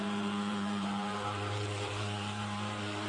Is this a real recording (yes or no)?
no